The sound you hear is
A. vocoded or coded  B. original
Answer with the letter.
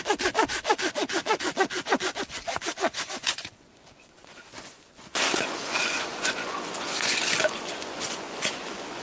A